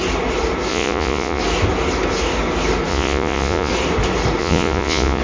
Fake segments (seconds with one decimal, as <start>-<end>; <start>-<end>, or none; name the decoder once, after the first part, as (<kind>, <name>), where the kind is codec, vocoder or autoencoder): 0.7-1.4 (vocoder, Vocos); 2.9-3.7; 4.4-5.2